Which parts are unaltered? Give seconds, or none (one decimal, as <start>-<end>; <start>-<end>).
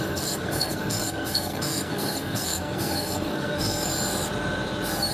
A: 3.9-5.1